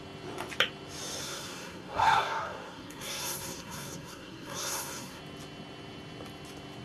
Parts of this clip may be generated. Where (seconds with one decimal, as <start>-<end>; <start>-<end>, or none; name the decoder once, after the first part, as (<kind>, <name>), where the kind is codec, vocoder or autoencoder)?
1.2-5.2 (codec, SNAC)